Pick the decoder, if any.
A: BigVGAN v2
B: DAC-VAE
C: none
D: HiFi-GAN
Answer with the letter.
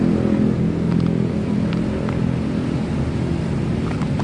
C